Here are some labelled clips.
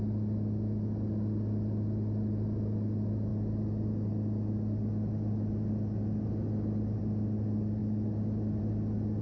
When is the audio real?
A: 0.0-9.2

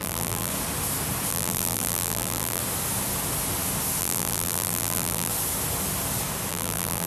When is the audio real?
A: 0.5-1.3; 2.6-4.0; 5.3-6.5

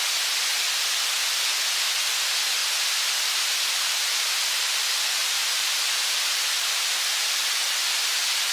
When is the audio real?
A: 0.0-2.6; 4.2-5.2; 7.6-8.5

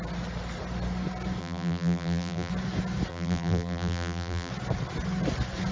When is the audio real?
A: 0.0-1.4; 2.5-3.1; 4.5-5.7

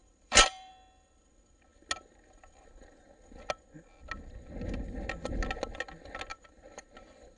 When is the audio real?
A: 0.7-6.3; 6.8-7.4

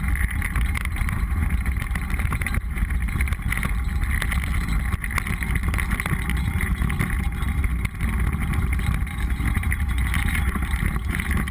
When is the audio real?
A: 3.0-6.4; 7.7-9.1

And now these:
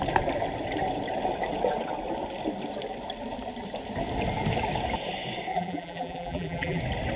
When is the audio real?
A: 0.0-5.5; 6.8-7.2